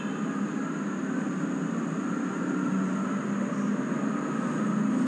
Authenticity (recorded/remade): recorded